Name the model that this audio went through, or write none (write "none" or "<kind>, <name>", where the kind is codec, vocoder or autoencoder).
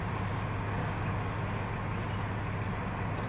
none